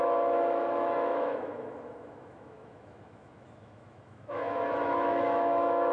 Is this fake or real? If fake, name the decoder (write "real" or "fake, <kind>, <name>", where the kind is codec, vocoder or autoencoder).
fake, autoencoder, DAC-VAE